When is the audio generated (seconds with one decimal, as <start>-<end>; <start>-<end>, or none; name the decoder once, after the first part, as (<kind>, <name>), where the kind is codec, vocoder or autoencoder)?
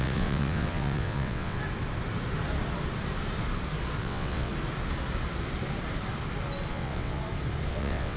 0.0-1.6 (vocoder, WaveNeXt); 4.0-4.5; 6.7-7.2; 7.7-8.2